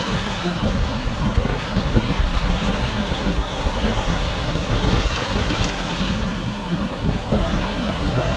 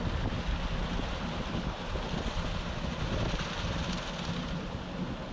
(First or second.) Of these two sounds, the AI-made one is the first